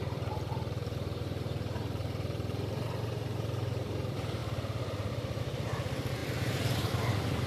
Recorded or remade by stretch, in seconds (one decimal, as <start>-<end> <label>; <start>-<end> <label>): 0.0-4.4 remade; 4.4-5.4 recorded; 5.4-7.5 remade